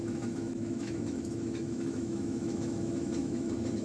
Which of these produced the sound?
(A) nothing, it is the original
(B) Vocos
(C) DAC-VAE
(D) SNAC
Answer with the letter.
C